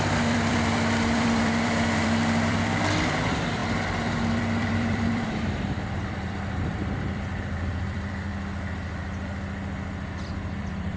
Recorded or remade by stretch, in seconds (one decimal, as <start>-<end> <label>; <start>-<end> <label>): 0.0-8.3 remade; 8.3-10.6 recorded; 10.6-11.0 remade